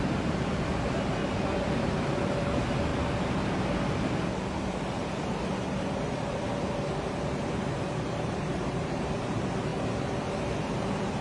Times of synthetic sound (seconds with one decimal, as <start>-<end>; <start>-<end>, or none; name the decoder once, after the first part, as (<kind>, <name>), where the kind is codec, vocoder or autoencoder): 0.0-1.2 (vocoder, BigVGAN v2); 2.0-2.9; 7.5-9.7; 10.3-11.2